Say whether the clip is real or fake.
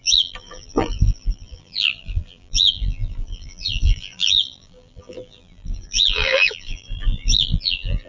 fake